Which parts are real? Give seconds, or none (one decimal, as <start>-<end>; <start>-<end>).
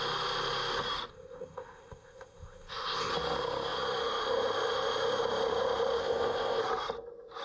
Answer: 0.0-1.1; 3.1-6.0; 6.6-7.4